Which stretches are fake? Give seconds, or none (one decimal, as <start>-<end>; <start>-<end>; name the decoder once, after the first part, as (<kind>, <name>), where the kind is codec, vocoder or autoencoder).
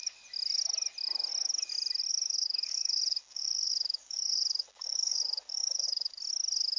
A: 2.1-6.2 (codec, DAC)